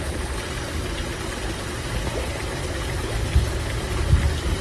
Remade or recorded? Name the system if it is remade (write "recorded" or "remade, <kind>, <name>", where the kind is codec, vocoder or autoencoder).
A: recorded